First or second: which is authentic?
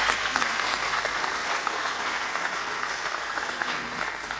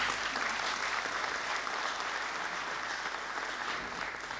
second